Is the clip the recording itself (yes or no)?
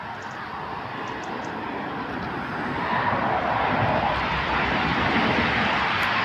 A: yes